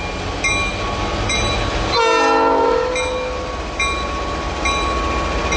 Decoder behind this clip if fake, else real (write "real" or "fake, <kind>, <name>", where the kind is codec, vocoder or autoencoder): real